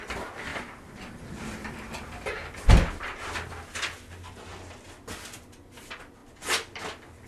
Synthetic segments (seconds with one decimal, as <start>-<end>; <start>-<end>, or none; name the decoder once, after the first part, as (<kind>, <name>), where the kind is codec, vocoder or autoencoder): 0.5-1.2 (vocoder, BigVGAN v2)